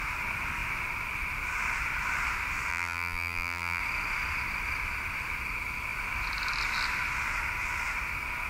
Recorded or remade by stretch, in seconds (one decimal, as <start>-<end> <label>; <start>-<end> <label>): 0.0-2.7 recorded; 2.7-3.8 remade; 3.8-8.5 recorded